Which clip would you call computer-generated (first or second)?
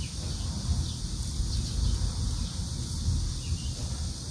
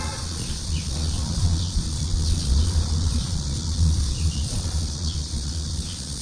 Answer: second